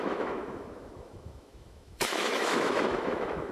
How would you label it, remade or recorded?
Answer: remade